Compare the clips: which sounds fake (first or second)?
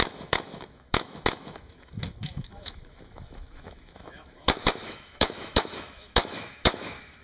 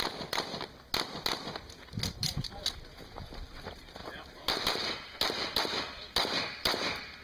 first